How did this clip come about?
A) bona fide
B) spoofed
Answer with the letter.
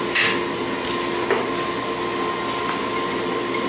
A